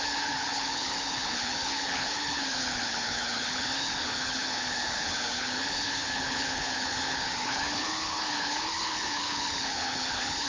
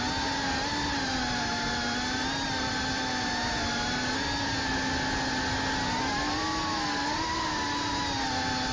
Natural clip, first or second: second